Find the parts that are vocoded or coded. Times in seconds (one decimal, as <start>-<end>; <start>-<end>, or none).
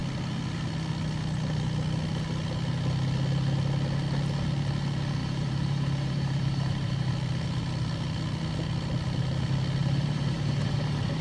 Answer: 5.2-7.1; 9.8-11.2